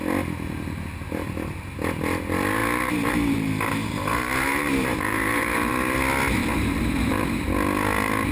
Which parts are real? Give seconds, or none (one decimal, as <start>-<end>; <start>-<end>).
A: 0.0-2.6; 5.7-6.4; 7.2-8.3